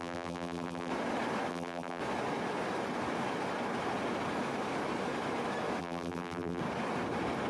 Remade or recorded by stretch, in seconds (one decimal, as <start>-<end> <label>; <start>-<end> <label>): 0.0-0.9 remade; 0.9-1.5 recorded; 1.5-2.0 remade; 2.0-5.8 recorded; 5.8-6.6 remade; 6.6-7.5 recorded